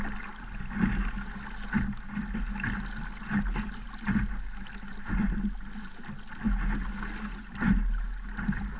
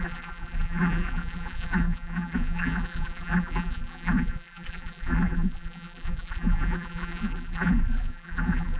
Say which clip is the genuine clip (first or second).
first